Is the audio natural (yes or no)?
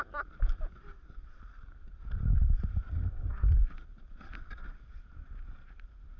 yes